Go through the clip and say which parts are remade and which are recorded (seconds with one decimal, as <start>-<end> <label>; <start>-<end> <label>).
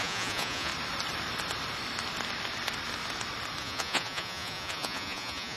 0.0-0.7 remade; 0.7-3.6 recorded; 3.6-5.6 remade